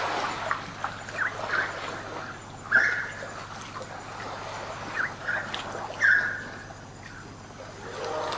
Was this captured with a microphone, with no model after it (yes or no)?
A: yes